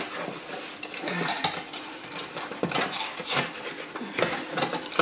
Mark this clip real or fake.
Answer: real